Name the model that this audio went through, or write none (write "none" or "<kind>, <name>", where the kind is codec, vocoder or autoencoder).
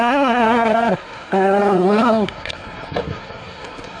codec, SNAC